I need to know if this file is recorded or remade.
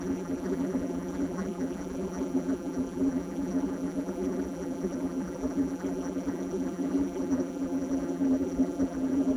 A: remade